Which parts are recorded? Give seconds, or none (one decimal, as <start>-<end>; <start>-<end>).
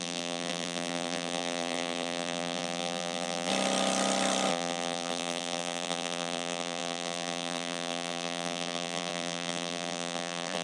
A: 3.5-4.5